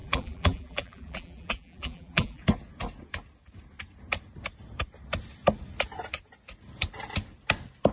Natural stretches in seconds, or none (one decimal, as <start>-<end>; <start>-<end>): 2.4-7.9